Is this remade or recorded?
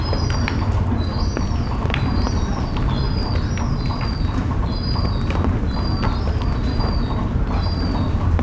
recorded